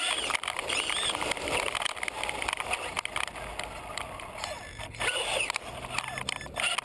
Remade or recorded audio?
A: recorded